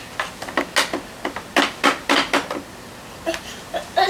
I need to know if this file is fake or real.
real